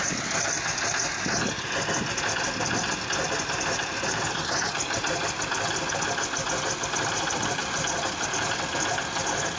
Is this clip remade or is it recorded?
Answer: recorded